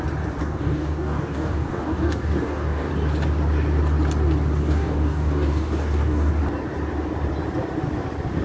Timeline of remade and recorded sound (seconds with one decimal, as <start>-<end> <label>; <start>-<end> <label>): 0.0-0.4 recorded; 0.4-2.9 remade; 2.9-4.6 recorded; 4.6-6.3 remade; 6.3-8.4 recorded